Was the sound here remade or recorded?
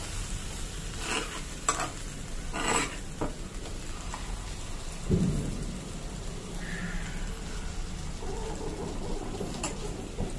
recorded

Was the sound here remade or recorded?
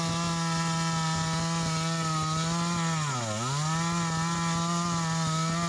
recorded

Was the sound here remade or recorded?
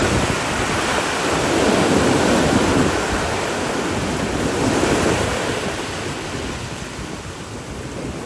recorded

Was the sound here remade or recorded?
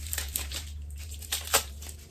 remade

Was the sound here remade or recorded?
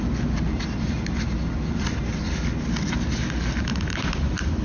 remade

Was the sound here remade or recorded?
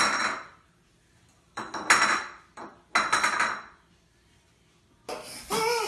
recorded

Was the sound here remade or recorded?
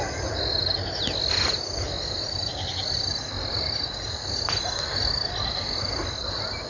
recorded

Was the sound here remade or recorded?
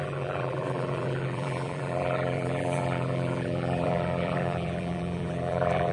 remade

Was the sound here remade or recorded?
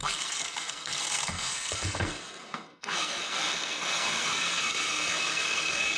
remade